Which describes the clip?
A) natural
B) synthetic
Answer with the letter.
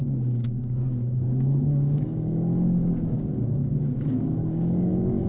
B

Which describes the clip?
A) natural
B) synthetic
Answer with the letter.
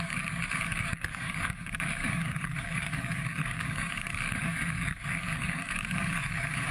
B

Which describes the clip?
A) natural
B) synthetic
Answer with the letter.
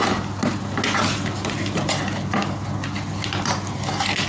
A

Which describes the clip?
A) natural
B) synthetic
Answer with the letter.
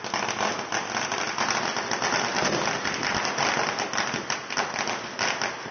A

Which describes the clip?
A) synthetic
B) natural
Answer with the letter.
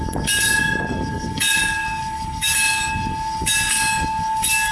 A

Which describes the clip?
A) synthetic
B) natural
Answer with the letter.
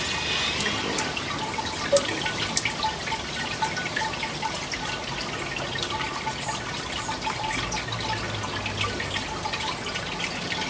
B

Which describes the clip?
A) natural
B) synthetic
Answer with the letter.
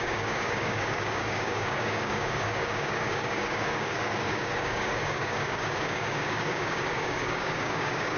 B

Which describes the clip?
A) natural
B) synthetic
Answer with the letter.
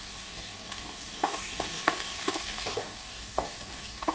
B